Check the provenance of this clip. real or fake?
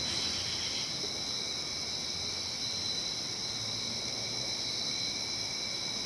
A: real